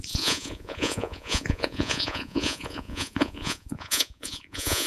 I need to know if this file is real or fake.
fake